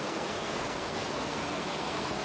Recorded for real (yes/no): no